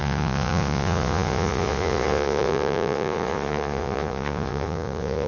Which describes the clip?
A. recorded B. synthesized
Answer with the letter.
B